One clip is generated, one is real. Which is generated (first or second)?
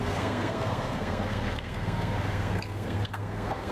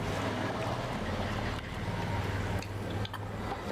first